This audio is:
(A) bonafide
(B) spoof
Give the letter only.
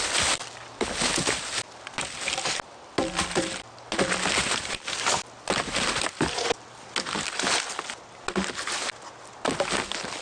A